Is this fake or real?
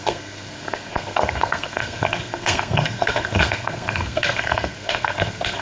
fake